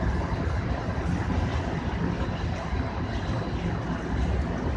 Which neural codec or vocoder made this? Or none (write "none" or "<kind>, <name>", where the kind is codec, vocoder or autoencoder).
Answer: none